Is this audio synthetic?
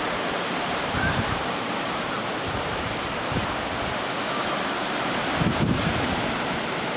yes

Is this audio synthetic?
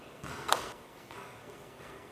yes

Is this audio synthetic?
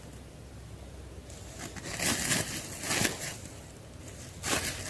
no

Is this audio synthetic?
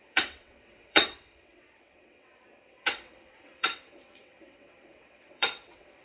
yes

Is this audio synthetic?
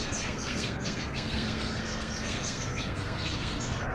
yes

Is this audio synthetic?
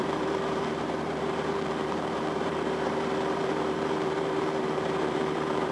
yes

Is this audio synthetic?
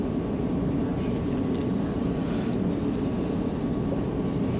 no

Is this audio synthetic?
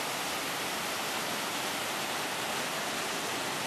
no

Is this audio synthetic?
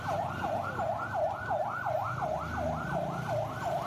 no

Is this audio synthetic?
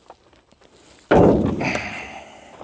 no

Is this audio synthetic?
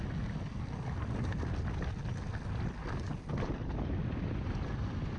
no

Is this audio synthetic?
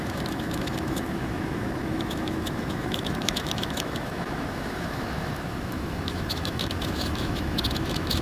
yes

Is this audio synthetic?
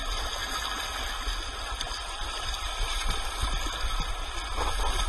no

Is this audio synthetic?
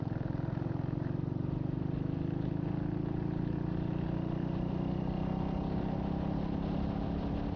no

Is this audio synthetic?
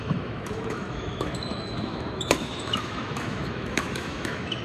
yes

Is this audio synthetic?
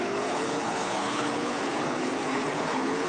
yes